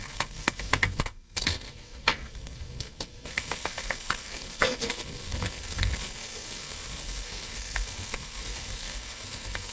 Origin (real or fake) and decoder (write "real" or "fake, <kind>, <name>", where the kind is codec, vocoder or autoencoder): fake, codec, SNAC